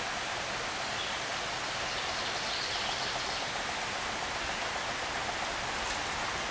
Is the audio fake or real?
real